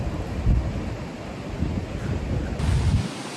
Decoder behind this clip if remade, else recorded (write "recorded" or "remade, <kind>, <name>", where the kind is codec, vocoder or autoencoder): recorded